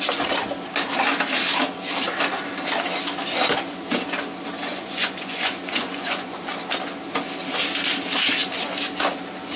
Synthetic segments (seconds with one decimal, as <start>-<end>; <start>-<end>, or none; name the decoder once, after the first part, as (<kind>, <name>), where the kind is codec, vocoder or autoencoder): 4.7-6.4 (vocoder, Vocos)